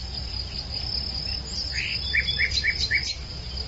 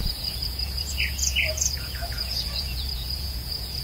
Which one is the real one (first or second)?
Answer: first